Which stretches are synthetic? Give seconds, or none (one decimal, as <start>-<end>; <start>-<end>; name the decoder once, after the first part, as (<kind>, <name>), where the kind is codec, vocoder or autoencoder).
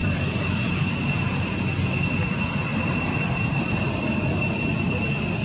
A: 0.0-0.9 (vocoder, BigVGAN v2); 2.7-3.7